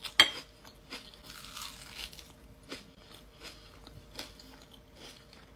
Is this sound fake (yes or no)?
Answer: no